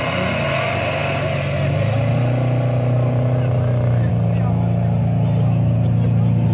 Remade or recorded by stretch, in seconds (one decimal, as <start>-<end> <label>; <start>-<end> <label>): 0.0-6.5 recorded